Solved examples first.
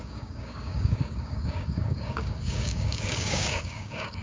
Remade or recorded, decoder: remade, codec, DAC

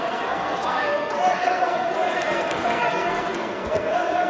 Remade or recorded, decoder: remade, codec, SNAC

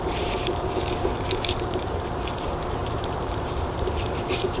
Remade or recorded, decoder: remade, vocoder, BigVGAN v2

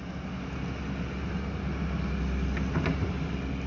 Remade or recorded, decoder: recorded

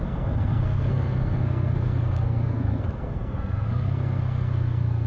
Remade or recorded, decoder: remade, codec, SNAC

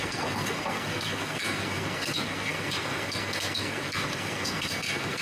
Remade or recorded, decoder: remade, codec, SNAC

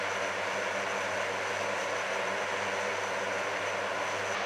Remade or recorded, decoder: recorded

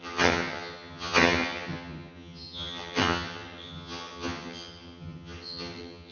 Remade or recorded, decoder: remade, vocoder, HiFi-GAN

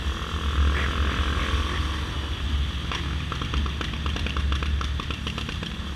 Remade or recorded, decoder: recorded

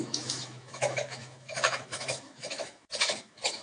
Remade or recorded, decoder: remade, autoencoder, DAC-VAE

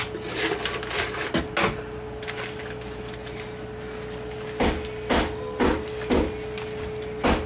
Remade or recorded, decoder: recorded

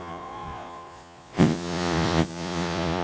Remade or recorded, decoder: remade, vocoder, Vocos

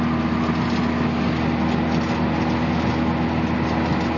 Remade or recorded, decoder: recorded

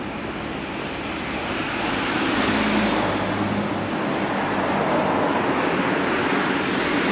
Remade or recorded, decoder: recorded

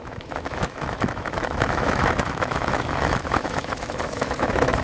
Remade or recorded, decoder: remade, autoencoder, DAC-VAE